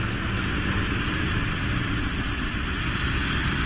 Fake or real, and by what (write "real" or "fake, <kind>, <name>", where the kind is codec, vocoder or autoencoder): real